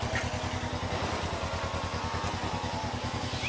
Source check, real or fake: real